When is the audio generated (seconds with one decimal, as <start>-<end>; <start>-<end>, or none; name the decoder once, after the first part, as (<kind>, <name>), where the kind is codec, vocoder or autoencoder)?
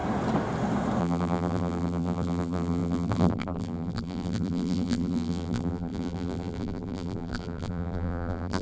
1.0-8.6 (vocoder, BigVGAN v2)